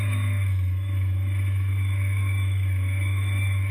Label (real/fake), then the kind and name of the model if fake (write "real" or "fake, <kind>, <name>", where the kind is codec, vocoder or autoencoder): fake, autoencoder, DAC-VAE